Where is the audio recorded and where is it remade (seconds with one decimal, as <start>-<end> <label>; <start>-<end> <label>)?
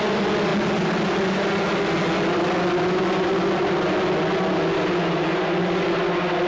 0.0-6.5 recorded